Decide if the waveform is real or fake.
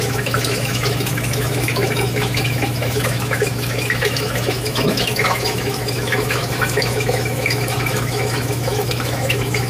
fake